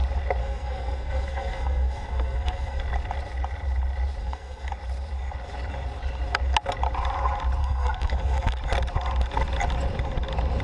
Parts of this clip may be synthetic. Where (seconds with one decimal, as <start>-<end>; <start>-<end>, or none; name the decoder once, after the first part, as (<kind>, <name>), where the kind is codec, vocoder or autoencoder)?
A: 0.4-2.8 (codec, SNAC); 4.2-4.7; 7.6-8.6